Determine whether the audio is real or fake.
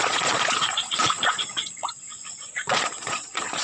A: fake